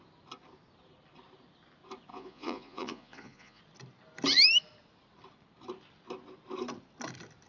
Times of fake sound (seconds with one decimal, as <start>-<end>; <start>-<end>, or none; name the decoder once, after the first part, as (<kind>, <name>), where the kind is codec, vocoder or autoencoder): 2.1-3.6 (vocoder, Vocos)